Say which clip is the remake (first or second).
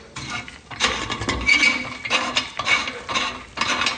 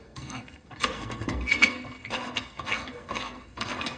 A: second